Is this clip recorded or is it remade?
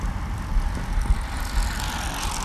recorded